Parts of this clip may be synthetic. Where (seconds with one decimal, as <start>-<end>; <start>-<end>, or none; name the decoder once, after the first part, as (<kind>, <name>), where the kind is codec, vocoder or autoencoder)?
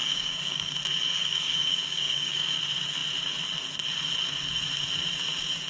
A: 0.0-0.7 (codec, DAC); 1.2-2.6